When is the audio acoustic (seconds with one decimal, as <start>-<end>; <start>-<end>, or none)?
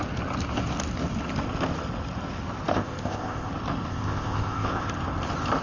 0.0-2.7; 3.5-3.9; 4.9-5.6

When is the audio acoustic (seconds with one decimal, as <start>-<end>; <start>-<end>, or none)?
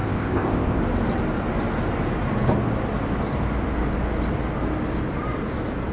0.8-5.9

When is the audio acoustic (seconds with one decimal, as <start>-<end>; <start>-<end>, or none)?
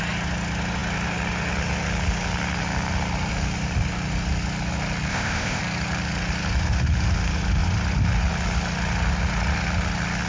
0.0-5.1; 5.6-10.3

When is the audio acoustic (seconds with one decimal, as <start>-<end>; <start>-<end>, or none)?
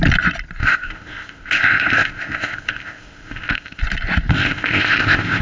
0.0-0.6; 3.8-4.3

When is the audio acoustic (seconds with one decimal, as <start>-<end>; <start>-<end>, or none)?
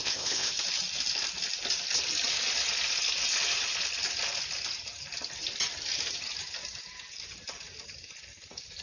0.5-8.8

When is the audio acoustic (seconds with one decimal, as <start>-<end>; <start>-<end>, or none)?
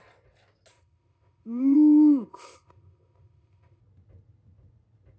0.0-0.7; 3.8-5.2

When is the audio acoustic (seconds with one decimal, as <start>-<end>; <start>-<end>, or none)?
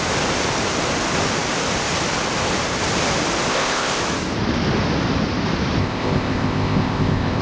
0.0-3.5; 4.0-5.8